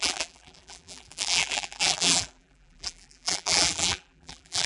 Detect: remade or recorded remade